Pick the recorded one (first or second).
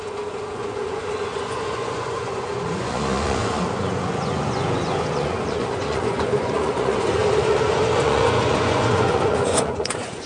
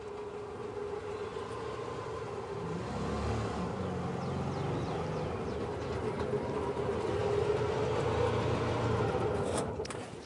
second